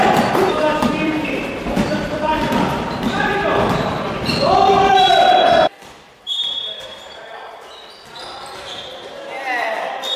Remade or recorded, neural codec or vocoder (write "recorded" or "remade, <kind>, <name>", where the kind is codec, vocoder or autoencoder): remade, vocoder, BigVGAN v2